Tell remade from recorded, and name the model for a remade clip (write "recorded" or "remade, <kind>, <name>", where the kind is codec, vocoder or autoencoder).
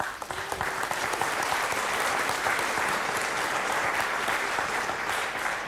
remade, vocoder, BigVGAN v2